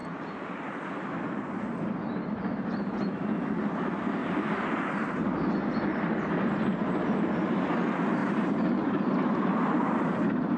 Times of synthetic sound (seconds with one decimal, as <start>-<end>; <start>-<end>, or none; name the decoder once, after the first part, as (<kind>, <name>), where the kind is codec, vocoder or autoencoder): 0.0-0.5 (vocoder, BigVGAN v2); 4.2-5.2; 8.2-9.1